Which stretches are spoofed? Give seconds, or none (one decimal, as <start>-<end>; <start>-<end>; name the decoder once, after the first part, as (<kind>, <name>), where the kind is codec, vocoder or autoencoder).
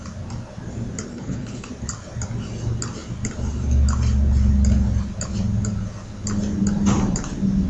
1.1-1.7 (codec, HILCodec)